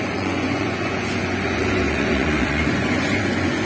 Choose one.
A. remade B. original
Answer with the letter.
A